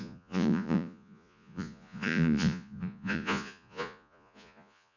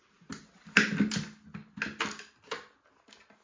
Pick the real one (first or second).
second